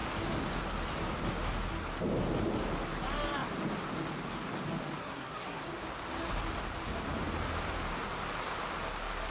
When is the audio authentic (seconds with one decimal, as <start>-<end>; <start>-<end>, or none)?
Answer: 0.0-5.0; 5.6-9.3